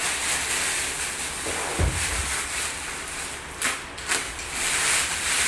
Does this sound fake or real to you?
fake